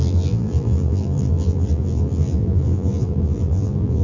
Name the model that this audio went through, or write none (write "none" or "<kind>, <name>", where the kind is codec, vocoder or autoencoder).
vocoder, BigVGAN v2